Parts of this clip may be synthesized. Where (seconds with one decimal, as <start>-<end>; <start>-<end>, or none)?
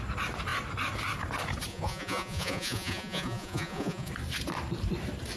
1.7-4.1